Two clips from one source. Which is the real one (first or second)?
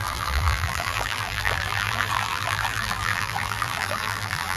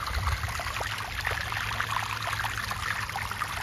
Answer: second